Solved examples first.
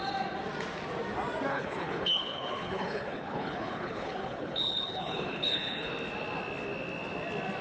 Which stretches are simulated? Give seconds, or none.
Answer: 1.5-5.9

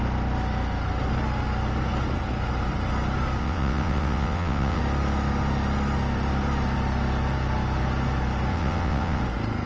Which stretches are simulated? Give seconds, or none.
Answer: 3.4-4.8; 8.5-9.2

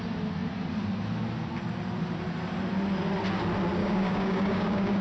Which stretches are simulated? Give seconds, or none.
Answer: 3.8-5.0